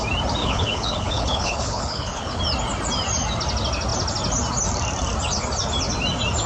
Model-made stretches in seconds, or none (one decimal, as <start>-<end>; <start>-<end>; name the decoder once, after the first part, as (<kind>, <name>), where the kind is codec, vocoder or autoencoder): 0.4-2.4 (codec, HILCodec)